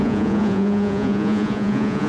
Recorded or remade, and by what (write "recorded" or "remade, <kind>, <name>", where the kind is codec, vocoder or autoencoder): remade, vocoder, Vocos